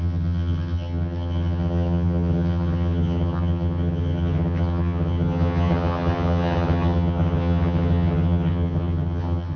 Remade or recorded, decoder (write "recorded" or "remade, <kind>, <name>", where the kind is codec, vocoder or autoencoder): remade, vocoder, HiFi-GAN